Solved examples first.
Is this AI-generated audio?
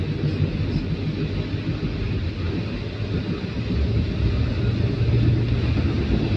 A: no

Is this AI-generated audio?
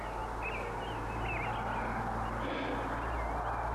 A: no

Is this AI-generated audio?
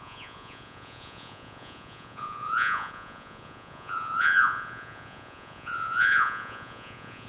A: yes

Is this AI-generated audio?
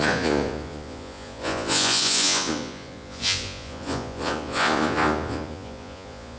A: yes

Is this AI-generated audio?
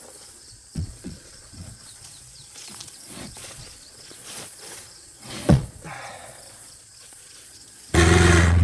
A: yes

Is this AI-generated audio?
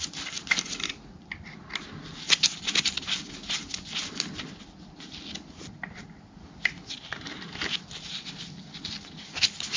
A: no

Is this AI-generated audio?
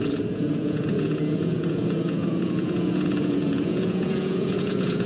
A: yes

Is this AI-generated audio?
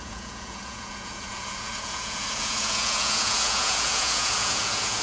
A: yes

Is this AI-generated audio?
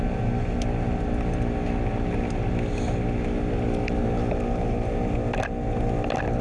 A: no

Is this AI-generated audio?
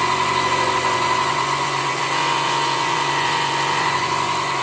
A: yes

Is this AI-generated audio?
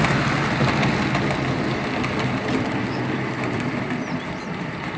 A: no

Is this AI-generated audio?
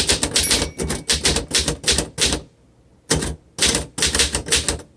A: no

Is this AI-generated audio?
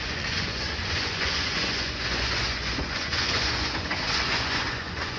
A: yes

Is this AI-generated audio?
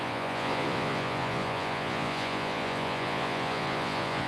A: yes